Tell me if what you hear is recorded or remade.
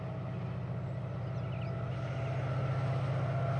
recorded